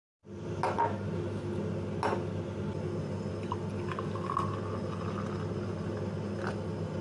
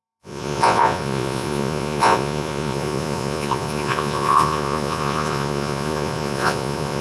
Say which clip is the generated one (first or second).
second